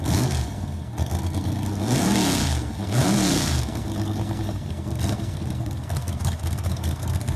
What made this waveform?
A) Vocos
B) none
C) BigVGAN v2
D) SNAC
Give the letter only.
D